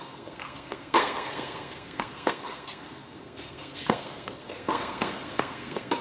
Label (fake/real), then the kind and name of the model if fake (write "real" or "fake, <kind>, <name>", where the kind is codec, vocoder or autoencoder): fake, codec, SNAC